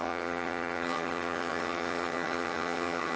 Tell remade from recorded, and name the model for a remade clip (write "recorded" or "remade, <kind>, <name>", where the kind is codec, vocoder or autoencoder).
remade, vocoder, HiFi-GAN